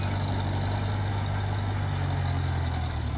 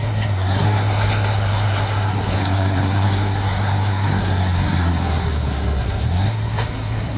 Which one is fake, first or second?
second